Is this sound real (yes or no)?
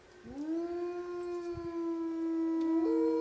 yes